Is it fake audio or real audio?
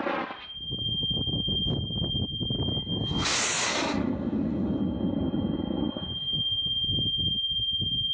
real